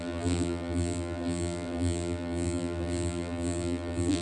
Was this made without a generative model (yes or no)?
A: no